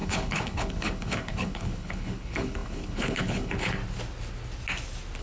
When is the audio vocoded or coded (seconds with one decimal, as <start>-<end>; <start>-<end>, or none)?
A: 0.0-3.8